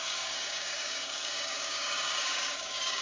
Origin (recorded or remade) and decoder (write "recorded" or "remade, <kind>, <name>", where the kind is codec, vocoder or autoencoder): remade, codec, DAC